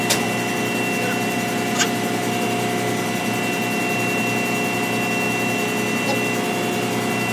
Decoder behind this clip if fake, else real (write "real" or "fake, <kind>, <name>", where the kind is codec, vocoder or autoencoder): real